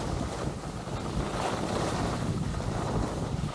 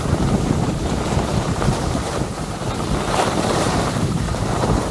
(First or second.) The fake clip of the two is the second